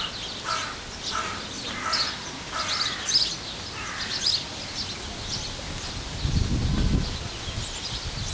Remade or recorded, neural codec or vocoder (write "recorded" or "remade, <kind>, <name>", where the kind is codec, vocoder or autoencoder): recorded